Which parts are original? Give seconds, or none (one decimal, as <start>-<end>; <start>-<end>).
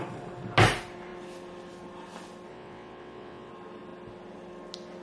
0.0-2.5; 3.5-5.0